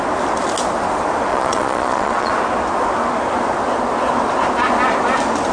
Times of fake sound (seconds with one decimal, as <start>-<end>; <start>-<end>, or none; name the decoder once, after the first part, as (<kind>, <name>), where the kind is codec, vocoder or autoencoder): 1.3-2.3 (vocoder, Vocos)